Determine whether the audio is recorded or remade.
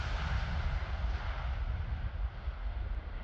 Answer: recorded